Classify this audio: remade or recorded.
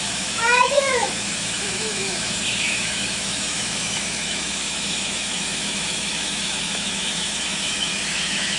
remade